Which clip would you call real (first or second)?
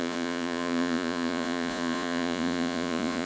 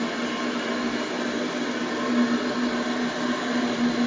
second